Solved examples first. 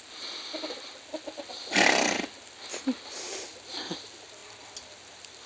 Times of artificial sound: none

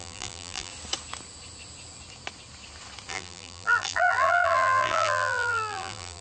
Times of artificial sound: 0.0-0.7 (vocoder, BigVGAN v2); 3.1-6.2

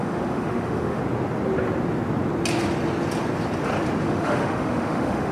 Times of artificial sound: 0.0-1.0 (autoencoder, DAC-VAE); 4.0-5.3

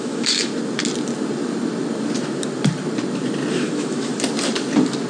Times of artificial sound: 0.0-0.5 (autoencoder, DAC-VAE); 3.5-4.1

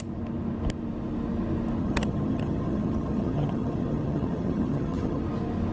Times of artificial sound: 1.8-5.2 (vocoder, HiFi-GAN)

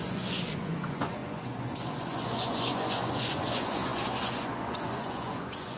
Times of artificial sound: 0.0-5.8 (vocoder, Vocos)

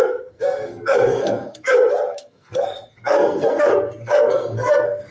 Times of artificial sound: 0.0-1.7 (codec, SNAC); 2.2-5.1

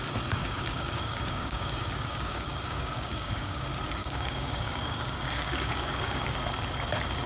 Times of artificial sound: 0.4-3.6 (codec, DAC); 4.0-6.4